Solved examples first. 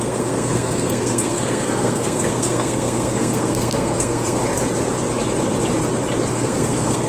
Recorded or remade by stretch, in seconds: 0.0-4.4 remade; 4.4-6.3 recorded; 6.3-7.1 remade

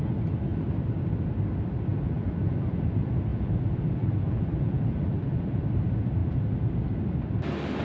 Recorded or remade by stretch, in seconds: 0.0-1.9 recorded; 1.9-2.8 remade; 2.8-3.3 recorded; 3.3-5.6 remade; 5.6-6.2 recorded; 6.2-6.7 remade; 6.7-7.8 recorded

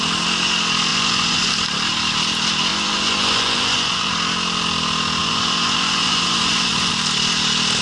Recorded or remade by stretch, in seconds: 0.0-0.9 recorded; 0.9-1.5 remade; 1.5-2.7 recorded; 2.7-4.1 remade; 4.1-5.2 recorded; 5.2-6.9 remade; 6.9-7.8 recorded

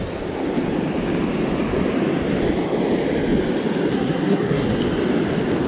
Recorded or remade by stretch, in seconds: 0.0-3.9 recorded; 3.9-4.8 remade; 4.8-5.7 recorded

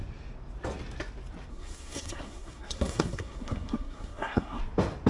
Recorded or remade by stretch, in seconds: 0.0-1.5 recorded; 1.5-4.6 remade; 4.6-5.1 recorded

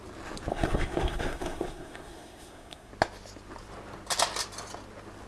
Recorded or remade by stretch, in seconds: 0.0-0.5 recorded; 0.5-2.9 remade; 2.9-5.3 recorded